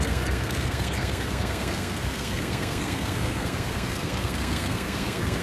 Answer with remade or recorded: remade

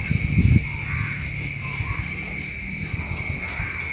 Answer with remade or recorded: recorded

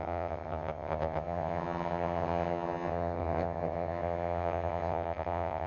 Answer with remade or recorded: remade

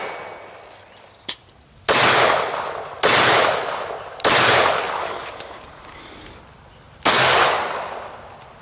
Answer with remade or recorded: recorded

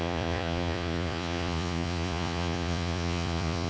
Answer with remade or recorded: remade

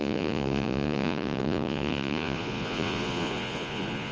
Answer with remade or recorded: remade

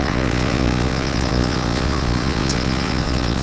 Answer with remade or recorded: remade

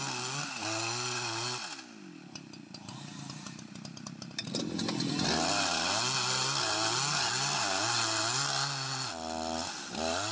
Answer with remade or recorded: recorded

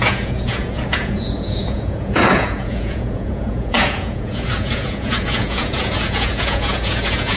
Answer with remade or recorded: remade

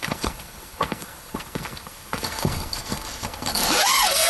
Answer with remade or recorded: remade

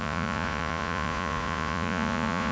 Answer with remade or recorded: remade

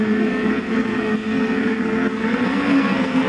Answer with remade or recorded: remade